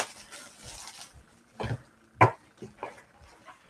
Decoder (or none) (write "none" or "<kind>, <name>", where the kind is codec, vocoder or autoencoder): none